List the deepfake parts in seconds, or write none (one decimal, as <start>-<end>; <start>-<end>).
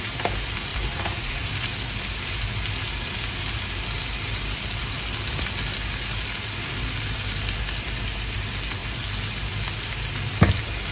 0.7-1.5